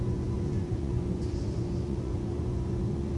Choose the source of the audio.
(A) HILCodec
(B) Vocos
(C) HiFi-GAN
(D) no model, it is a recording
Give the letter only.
B